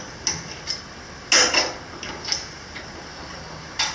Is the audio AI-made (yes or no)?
no